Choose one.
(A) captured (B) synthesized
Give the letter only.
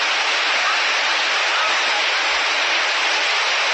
A